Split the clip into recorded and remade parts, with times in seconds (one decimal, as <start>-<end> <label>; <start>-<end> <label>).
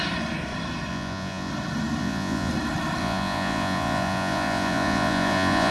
0.0-0.9 recorded; 0.9-1.5 remade; 1.5-2.0 recorded; 2.0-2.5 remade; 2.5-3.0 recorded; 3.0-5.7 remade